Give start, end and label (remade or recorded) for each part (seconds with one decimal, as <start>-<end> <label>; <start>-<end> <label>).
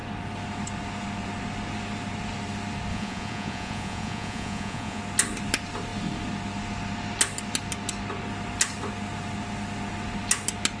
0.0-2.9 recorded; 2.9-5.0 remade; 5.0-10.8 recorded